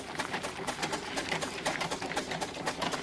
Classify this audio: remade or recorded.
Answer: remade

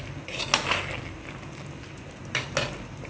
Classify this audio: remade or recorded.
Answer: recorded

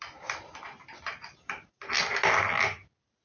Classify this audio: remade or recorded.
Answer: recorded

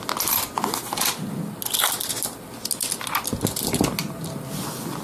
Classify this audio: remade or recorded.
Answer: recorded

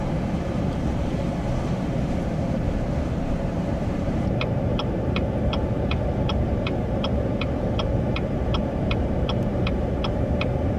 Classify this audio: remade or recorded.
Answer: remade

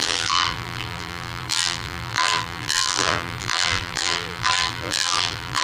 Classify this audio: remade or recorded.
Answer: remade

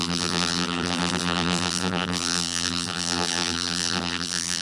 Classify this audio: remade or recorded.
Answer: remade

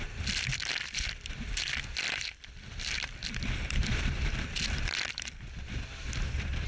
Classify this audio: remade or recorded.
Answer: remade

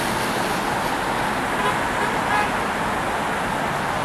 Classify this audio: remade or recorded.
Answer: recorded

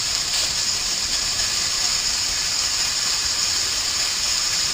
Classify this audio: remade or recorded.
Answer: remade